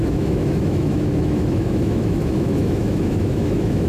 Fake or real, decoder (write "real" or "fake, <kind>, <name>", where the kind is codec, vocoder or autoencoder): fake, autoencoder, DAC-VAE